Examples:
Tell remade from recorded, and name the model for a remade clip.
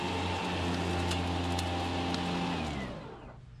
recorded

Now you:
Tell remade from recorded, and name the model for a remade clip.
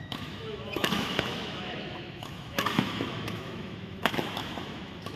remade, autoencoder, DAC-VAE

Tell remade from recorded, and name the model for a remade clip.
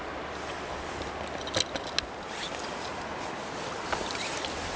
recorded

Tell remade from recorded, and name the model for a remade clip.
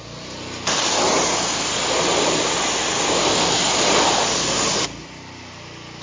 recorded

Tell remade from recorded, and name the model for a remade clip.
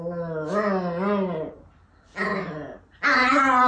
recorded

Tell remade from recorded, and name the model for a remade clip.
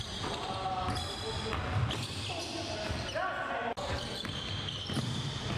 recorded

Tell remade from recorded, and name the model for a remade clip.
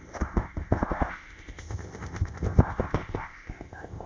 remade, codec, ZipCodec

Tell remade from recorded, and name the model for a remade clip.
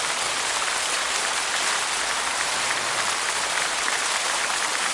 recorded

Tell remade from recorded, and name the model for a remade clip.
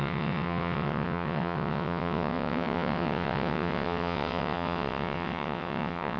remade, vocoder, WaveNeXt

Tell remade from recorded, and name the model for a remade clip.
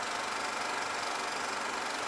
recorded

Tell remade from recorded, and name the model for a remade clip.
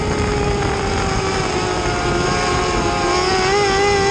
recorded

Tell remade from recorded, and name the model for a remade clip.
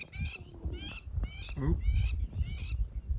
recorded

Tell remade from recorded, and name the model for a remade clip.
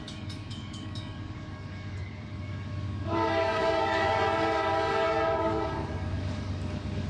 remade, codec, DAC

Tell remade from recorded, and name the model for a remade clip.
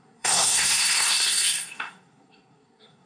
remade, codec, SNAC